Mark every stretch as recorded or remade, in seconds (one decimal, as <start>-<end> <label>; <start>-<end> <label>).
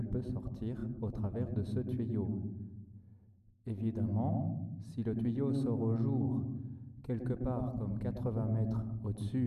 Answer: 0.0-9.5 recorded